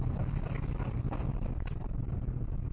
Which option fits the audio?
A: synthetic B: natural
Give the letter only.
B